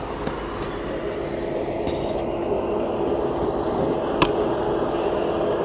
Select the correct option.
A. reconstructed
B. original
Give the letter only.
B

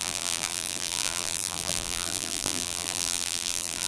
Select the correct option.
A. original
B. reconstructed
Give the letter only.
B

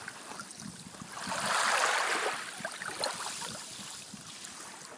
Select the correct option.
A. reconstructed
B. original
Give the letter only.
B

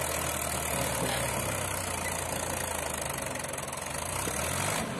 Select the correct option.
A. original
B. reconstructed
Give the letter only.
A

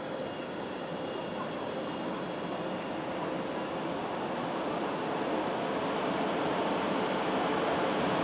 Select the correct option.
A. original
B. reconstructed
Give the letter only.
A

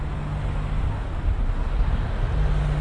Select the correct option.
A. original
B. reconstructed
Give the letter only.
A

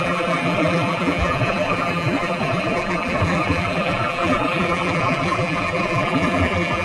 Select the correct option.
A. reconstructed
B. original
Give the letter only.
A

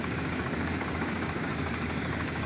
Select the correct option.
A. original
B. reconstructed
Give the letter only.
B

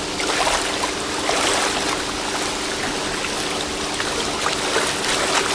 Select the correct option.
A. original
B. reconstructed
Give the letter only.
A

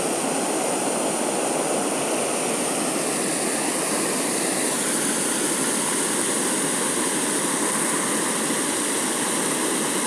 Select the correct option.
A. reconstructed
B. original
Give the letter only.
B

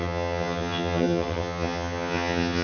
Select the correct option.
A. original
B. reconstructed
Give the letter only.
B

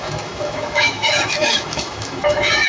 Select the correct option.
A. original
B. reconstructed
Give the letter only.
B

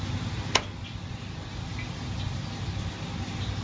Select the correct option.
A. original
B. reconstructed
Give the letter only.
A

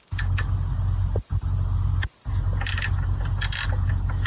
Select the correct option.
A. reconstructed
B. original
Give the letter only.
B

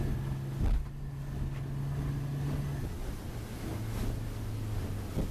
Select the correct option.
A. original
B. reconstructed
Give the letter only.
A